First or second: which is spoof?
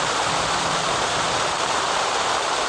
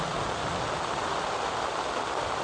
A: first